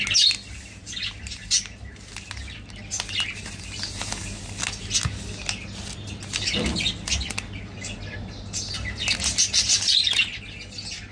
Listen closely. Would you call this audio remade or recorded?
recorded